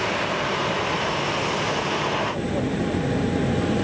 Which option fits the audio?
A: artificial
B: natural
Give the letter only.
B